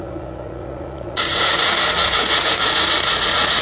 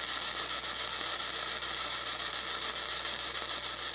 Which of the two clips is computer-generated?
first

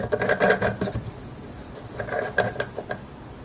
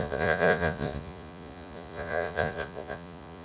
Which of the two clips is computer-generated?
second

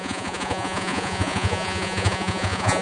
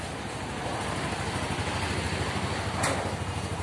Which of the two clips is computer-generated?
first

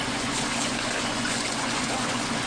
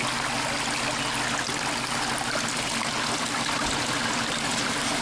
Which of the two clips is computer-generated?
first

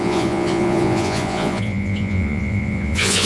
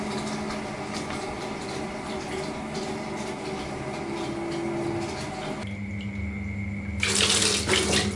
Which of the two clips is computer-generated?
first